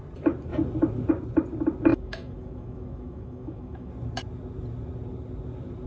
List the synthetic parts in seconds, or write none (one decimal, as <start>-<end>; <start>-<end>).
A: 1.9-3.9